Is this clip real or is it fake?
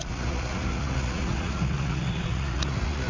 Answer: fake